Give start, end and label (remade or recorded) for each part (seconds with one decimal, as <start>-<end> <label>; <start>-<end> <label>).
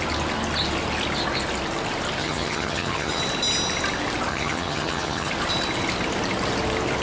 0.0-2.2 recorded; 2.2-3.2 remade; 3.2-4.3 recorded; 4.3-5.3 remade; 5.3-7.0 recorded